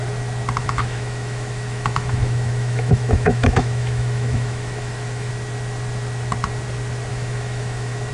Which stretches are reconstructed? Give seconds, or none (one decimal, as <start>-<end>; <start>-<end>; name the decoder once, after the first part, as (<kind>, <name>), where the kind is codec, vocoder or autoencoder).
0.6-5.3 (autoencoder, DAC-VAE); 7.1-8.1